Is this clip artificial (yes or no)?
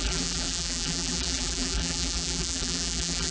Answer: yes